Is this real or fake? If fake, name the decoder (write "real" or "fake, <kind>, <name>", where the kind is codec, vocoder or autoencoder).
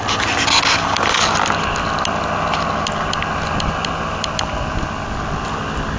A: real